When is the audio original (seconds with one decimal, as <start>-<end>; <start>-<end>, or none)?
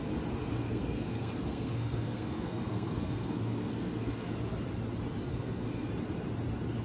0.0-0.6; 4.3-5.3; 5.9-6.8